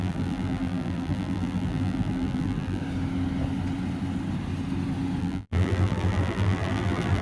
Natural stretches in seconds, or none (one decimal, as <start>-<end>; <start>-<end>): 2.8-5.2